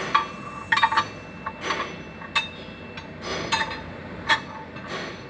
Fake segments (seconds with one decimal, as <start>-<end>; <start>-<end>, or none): none

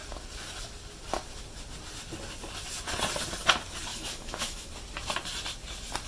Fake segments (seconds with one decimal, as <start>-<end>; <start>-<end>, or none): 3.9-4.7

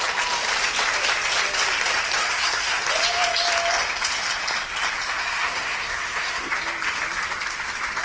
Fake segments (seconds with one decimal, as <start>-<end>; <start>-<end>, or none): 2.2-2.8; 5.2-6.5

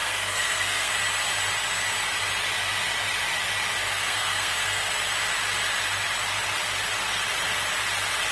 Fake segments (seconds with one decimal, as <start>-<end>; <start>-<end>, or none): 0.0-0.9; 3.8-4.9

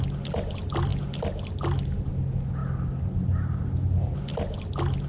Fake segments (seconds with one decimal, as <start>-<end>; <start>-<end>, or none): none